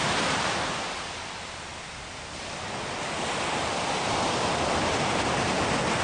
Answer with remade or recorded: recorded